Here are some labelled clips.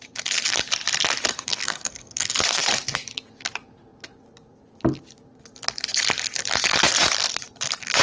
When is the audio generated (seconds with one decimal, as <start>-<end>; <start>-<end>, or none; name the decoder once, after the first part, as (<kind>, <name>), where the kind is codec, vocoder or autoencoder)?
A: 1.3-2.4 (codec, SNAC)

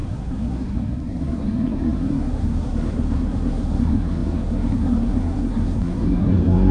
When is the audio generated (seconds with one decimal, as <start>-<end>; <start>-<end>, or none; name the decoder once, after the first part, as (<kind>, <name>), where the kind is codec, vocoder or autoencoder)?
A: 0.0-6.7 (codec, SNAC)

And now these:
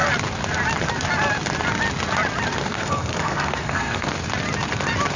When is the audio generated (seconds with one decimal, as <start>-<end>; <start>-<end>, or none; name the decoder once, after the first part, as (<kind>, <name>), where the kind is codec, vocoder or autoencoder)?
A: 2.6-4.1 (codec, SNAC)

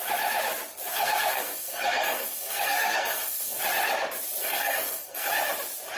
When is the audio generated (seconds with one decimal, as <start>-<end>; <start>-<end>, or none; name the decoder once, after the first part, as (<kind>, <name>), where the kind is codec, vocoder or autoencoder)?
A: 0.9-3.6 (codec, SNAC); 4.4-5.3